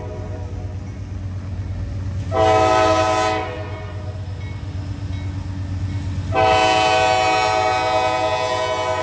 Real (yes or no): yes